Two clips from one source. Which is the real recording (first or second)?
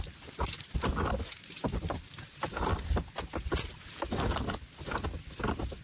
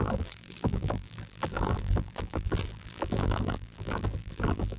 first